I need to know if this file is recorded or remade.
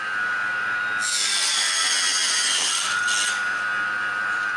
remade